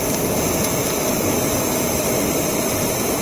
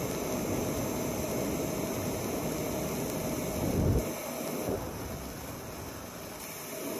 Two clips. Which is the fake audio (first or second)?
first